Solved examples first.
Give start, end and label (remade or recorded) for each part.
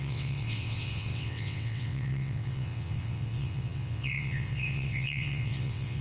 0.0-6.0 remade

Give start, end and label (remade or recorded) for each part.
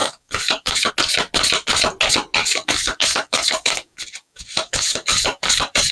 0.0-0.9 remade; 0.9-2.4 recorded; 2.4-5.9 remade